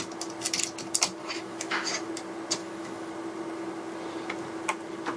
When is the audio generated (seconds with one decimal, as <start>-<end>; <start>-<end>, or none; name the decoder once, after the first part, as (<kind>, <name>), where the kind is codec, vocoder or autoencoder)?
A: 1.2-1.9 (autoencoder, DAC-VAE); 2.6-3.1